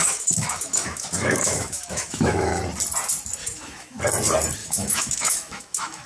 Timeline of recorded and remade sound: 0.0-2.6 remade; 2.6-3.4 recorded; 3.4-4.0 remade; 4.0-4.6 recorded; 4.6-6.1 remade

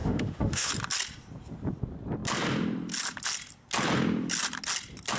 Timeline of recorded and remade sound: 0.0-0.7 remade; 0.7-5.2 recorded

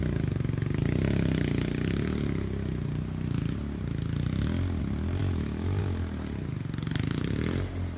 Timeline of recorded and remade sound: 0.0-5.2 recorded; 5.2-5.8 remade; 5.8-8.0 recorded

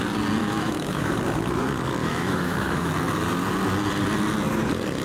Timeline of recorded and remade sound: 0.0-0.4 recorded; 0.4-1.1 remade; 1.1-2.0 recorded; 2.0-2.9 remade; 2.9-5.0 recorded

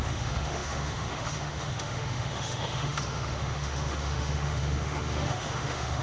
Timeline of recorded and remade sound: 0.0-6.0 remade